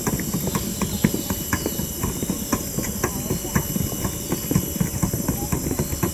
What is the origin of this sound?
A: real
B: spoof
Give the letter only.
A